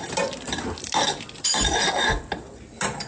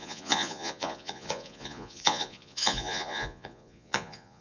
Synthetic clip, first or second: second